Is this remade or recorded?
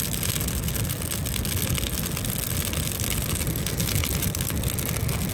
recorded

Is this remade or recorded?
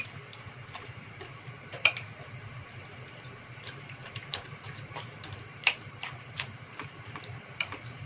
remade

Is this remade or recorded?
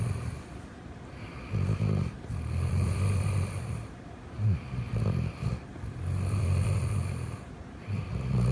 recorded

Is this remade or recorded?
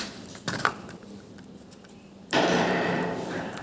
remade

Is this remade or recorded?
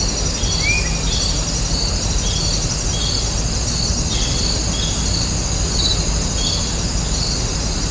recorded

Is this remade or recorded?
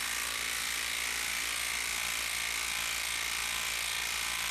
remade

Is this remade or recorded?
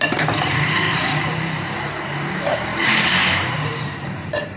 remade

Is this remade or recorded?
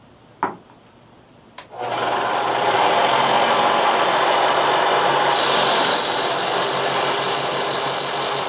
recorded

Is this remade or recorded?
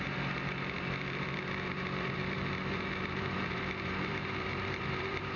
remade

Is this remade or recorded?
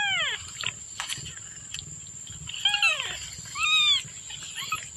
recorded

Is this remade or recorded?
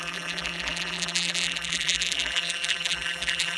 remade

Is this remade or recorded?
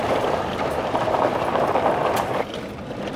recorded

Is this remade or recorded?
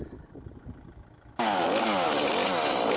recorded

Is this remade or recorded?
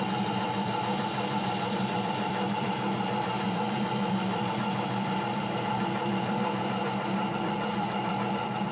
remade